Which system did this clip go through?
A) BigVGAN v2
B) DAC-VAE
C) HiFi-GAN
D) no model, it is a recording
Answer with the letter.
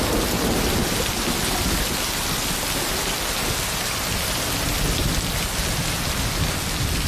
D